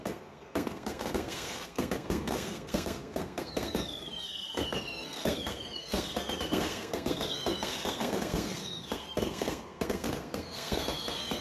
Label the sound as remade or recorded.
remade